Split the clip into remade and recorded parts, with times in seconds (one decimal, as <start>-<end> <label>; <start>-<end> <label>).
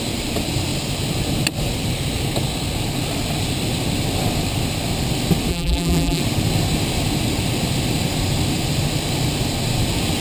0.0-5.5 recorded; 5.5-6.2 remade; 6.2-10.2 recorded